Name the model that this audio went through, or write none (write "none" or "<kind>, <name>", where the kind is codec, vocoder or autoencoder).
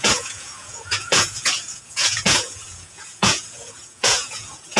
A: vocoder, Vocos